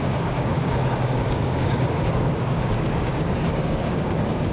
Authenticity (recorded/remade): remade